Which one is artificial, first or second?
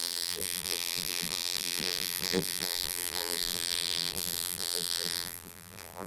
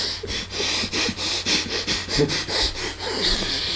first